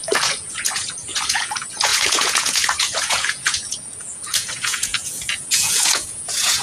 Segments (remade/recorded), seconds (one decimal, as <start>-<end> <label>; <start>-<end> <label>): 0.0-6.6 remade

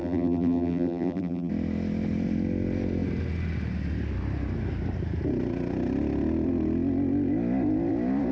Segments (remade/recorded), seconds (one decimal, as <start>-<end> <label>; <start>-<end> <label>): 0.0-1.5 remade; 1.5-8.3 recorded

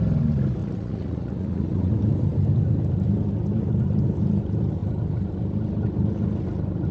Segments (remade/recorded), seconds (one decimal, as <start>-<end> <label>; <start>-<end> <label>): 0.0-0.6 recorded; 0.6-1.9 remade; 1.9-6.9 recorded

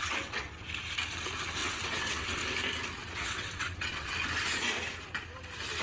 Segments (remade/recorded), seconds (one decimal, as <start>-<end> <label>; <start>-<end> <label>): 0.0-0.6 remade; 0.6-1.6 recorded; 1.6-2.4 remade; 2.4-3.0 recorded; 3.0-4.1 remade; 4.1-5.8 recorded

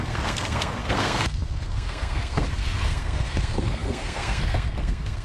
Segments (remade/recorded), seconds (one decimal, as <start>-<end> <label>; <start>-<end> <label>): 0.0-5.2 remade

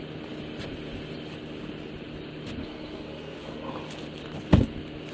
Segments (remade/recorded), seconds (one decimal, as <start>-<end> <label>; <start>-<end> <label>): 0.0-2.6 recorded; 2.6-3.7 remade; 3.7-5.1 recorded

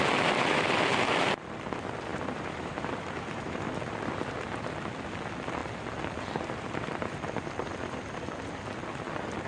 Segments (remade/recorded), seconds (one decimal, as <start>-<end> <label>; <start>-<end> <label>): 0.0-2.1 recorded; 2.1-3.6 remade; 3.6-9.5 recorded